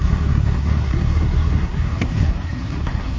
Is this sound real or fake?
fake